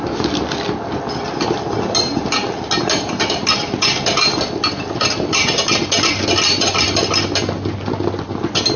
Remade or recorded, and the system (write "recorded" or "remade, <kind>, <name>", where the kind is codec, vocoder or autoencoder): recorded